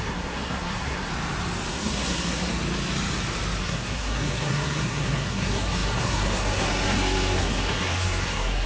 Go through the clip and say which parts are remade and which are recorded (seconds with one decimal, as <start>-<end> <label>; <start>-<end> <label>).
0.0-1.1 remade; 1.1-1.7 recorded; 1.7-2.5 remade; 2.5-3.6 recorded; 3.6-8.7 remade